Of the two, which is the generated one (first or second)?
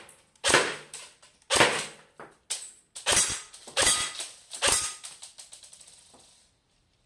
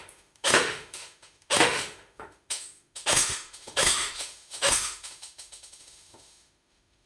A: second